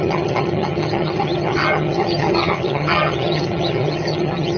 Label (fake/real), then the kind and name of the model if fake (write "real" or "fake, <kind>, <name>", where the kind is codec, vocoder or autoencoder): fake, vocoder, HiFi-GAN